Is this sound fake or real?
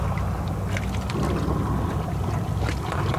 real